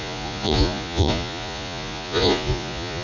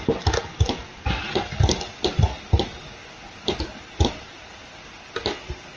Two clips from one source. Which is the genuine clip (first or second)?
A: second